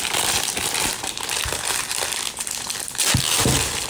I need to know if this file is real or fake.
fake